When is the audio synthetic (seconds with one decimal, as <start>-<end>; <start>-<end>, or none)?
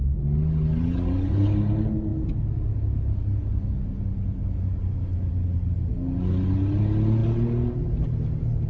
none